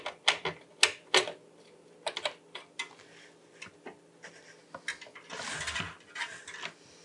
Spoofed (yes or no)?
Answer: no